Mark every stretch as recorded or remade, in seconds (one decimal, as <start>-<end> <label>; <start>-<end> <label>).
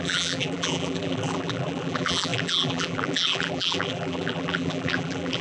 0.0-5.4 remade